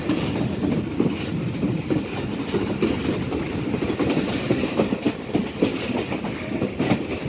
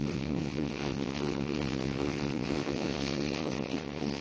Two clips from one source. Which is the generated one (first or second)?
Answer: second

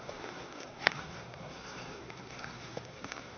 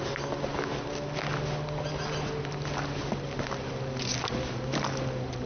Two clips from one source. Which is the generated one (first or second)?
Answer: first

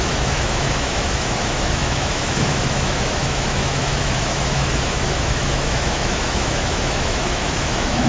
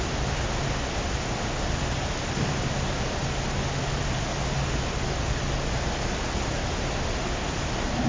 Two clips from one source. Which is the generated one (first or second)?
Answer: first